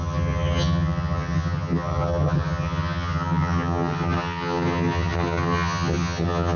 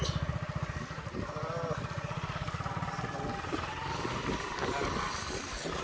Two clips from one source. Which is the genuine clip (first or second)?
second